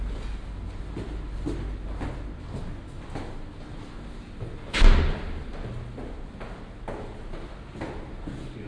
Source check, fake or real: real